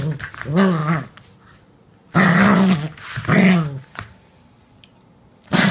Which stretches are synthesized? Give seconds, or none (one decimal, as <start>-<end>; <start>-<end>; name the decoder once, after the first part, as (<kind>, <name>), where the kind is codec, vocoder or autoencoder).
none